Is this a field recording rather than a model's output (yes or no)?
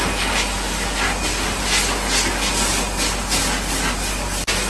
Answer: yes